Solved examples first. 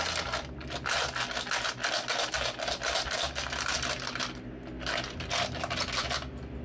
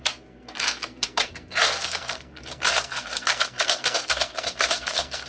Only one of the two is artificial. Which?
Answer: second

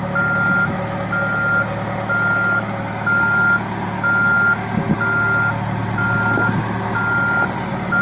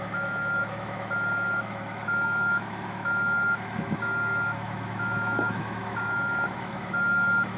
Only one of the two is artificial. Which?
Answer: second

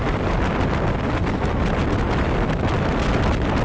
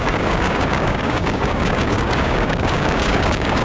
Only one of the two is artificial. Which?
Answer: second